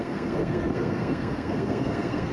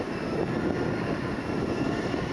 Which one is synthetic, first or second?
first